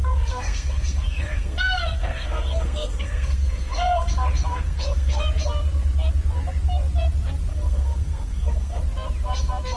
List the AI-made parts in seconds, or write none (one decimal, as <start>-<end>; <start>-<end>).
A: 0.0-4.1; 4.5-5.2; 7.5-8.8